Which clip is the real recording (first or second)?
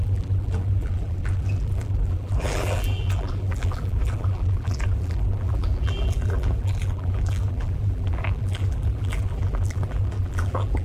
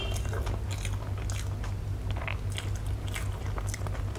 second